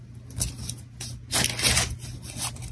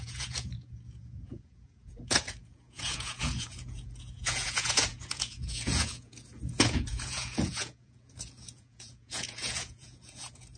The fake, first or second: second